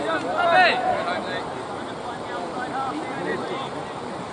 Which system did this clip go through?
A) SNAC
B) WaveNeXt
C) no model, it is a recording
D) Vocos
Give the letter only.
C